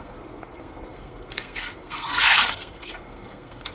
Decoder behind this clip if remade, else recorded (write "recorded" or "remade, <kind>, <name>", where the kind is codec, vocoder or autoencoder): remade, codec, SNAC